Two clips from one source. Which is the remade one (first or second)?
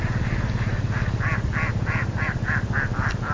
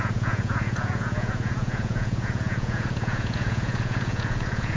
second